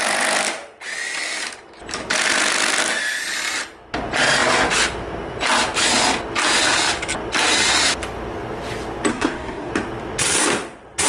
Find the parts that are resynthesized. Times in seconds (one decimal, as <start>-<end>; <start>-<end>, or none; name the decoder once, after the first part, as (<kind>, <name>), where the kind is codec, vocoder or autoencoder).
9.1-9.7 (codec, SNAC)